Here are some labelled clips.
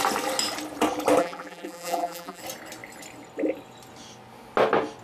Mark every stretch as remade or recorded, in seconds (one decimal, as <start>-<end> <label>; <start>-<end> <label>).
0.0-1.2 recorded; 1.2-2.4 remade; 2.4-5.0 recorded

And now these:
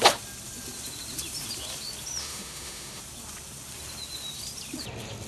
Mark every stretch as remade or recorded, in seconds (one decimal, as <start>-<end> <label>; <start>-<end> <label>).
0.0-2.2 recorded; 2.2-3.0 remade; 3.0-5.3 recorded

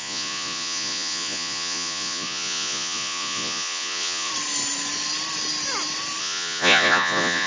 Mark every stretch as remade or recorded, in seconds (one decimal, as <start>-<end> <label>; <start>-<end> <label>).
0.0-4.3 remade; 4.3-6.2 recorded; 6.2-7.5 remade

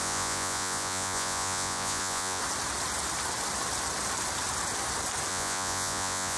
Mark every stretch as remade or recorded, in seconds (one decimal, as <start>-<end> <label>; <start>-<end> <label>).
0.0-2.4 remade; 2.4-5.3 recorded; 5.3-6.4 remade

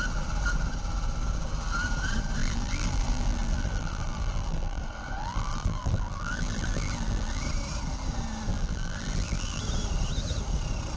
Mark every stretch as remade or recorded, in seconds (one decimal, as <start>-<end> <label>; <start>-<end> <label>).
0.0-2.4 recorded; 2.4-4.8 remade; 4.8-5.2 recorded; 5.2-7.4 remade; 7.4-8.5 recorded; 8.5-9.6 remade; 9.6-11.0 recorded